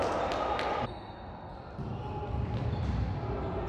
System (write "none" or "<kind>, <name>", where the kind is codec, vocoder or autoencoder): none